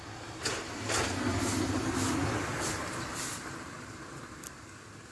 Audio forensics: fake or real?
real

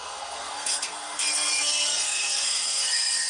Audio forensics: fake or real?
fake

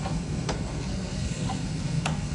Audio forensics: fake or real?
fake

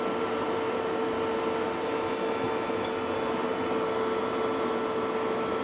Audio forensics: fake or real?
real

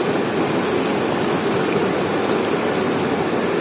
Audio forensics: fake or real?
real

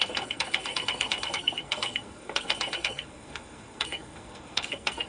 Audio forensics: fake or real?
fake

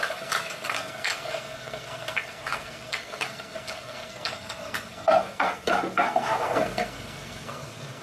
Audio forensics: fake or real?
fake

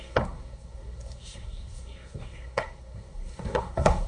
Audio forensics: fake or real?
fake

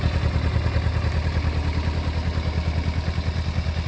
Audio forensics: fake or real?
real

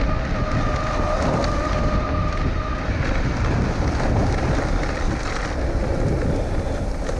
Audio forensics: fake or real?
real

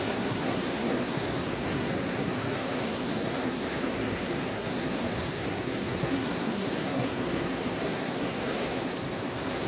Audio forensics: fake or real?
fake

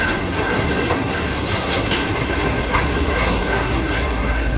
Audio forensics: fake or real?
fake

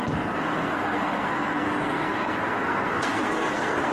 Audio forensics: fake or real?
fake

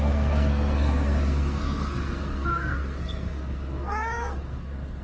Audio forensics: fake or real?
fake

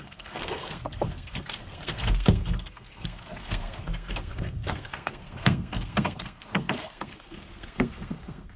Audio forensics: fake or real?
fake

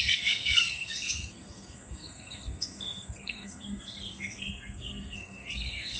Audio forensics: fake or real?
fake